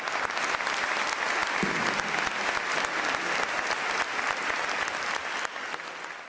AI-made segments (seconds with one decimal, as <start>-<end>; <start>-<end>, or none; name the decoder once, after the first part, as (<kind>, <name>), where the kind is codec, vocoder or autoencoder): none